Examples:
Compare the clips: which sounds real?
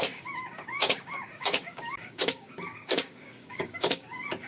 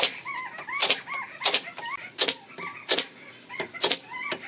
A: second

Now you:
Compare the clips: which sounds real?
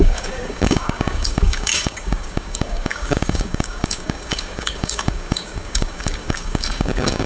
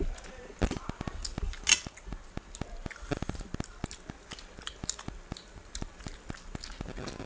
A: second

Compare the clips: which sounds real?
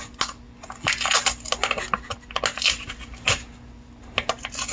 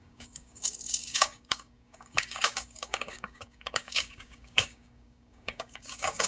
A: first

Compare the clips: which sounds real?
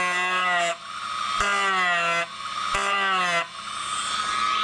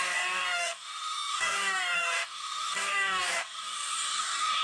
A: first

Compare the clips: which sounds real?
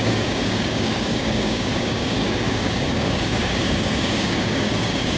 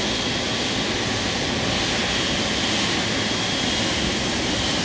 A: second